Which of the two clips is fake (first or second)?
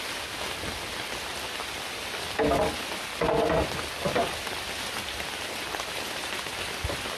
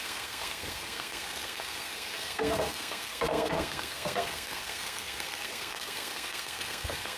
second